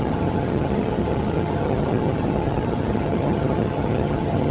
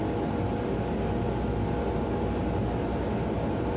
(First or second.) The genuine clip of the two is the second